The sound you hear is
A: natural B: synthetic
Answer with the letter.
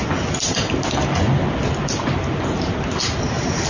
A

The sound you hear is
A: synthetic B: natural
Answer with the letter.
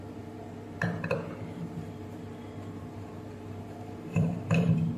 A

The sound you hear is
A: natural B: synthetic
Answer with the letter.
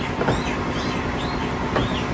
A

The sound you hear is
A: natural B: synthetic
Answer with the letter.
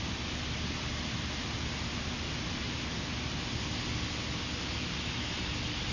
A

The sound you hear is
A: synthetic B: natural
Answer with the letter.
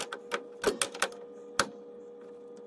B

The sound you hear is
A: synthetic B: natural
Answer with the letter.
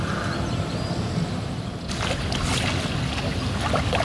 B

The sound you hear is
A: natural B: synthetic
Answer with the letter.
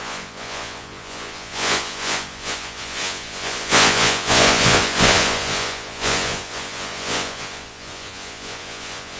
B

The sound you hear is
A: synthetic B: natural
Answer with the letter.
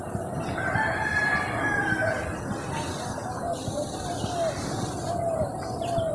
B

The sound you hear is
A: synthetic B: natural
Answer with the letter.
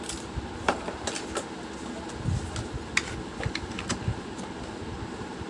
B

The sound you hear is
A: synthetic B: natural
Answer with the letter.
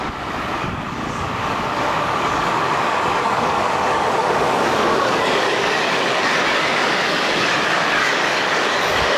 A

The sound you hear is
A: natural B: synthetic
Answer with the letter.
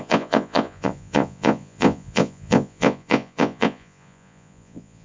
B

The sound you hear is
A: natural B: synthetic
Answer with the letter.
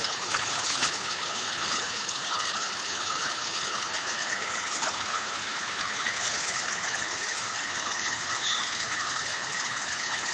B